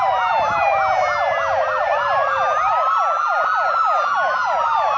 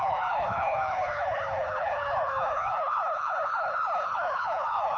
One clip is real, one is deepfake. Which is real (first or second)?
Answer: first